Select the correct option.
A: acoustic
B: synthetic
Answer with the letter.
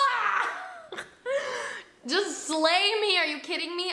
A